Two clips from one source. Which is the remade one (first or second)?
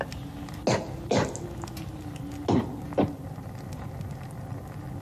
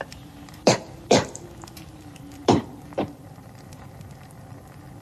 second